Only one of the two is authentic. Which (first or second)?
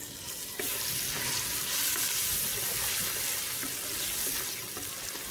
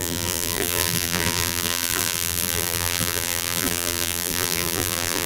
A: first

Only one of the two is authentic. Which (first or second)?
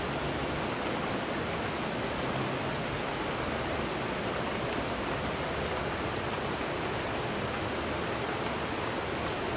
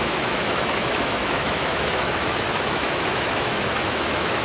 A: first